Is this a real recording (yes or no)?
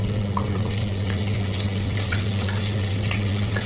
no